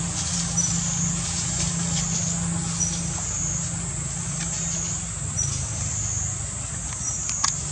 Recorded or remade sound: recorded